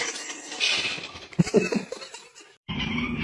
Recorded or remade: remade